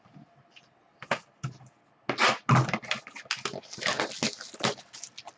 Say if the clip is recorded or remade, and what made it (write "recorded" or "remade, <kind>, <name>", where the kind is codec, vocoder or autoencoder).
recorded